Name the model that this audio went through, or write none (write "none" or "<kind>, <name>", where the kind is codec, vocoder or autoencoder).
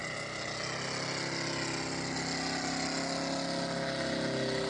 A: none